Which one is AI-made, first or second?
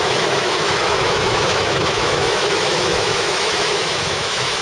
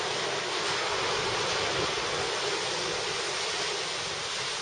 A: first